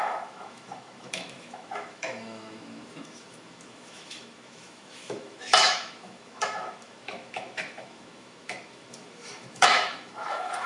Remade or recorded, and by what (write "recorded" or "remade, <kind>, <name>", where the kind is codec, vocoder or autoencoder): remade, autoencoder, DAC-VAE